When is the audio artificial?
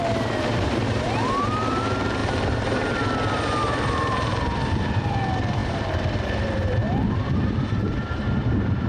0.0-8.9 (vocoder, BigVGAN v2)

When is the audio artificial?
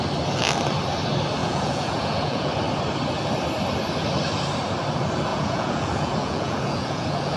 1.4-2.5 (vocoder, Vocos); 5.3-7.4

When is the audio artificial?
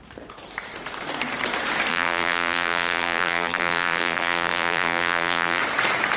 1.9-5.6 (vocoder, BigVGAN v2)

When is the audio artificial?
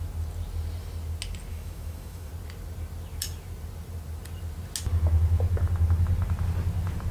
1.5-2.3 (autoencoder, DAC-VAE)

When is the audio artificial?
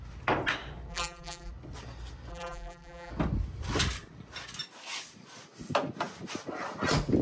0.9-1.5 (vocoder, BigVGAN v2); 2.3-3.1